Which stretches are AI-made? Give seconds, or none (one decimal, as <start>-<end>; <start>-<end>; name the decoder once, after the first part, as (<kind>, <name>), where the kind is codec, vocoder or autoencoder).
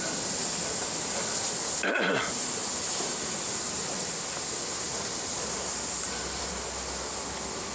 0.4-1.1 (vocoder, BigVGAN v2); 2.6-3.3; 4.0-6.5